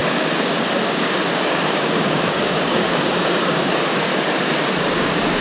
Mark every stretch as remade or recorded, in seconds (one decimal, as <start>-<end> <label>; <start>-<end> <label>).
0.0-4.1 remade; 4.1-4.8 recorded; 4.8-5.4 remade